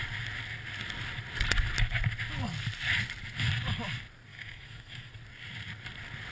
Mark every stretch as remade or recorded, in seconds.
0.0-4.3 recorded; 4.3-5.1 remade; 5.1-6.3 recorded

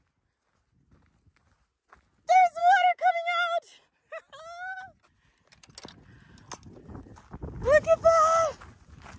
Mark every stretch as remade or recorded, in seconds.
0.0-2.6 recorded; 2.6-3.1 remade; 3.1-9.2 recorded

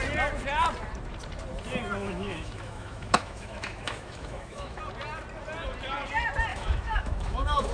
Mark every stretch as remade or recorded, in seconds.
0.0-2.0 recorded; 2.0-4.8 remade; 4.8-6.5 recorded; 6.5-7.7 remade

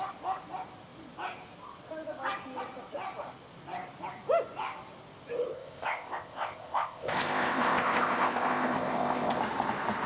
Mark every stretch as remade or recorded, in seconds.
0.0-5.5 recorded; 5.5-9.4 remade; 9.4-10.1 recorded

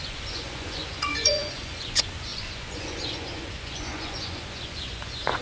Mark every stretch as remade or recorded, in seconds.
0.0-5.4 remade